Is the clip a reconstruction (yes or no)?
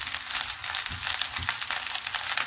no